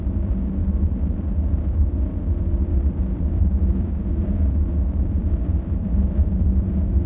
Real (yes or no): no